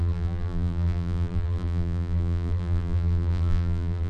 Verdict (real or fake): fake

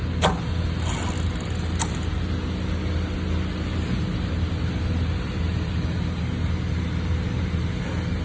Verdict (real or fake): real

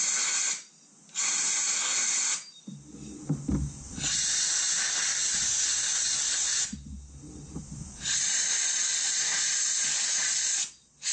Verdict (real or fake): real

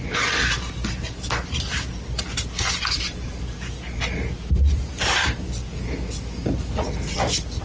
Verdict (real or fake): real